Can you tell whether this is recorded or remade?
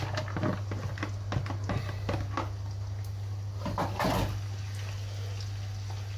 recorded